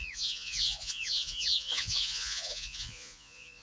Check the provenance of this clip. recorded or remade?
remade